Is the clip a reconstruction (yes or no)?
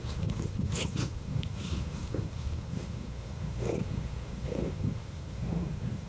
yes